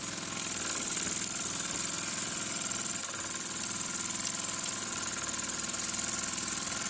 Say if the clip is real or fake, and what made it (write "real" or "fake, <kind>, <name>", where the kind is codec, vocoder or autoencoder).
real